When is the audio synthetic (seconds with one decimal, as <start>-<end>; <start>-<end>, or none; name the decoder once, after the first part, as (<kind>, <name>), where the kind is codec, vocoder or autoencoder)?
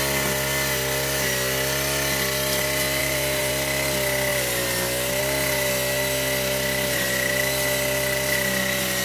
3.0-3.5 (vocoder, BigVGAN v2)